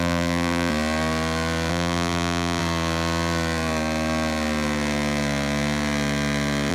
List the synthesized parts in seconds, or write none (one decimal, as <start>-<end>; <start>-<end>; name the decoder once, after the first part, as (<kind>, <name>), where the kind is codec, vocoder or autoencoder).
0.0-0.7 (vocoder, BigVGAN v2); 1.7-2.6